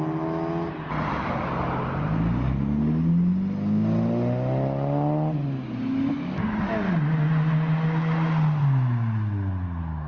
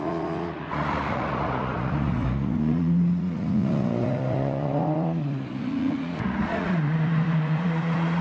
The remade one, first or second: second